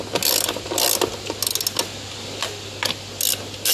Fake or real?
real